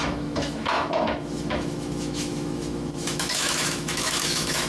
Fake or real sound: fake